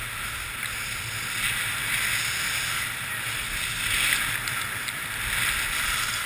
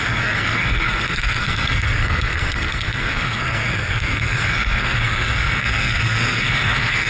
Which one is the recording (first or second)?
first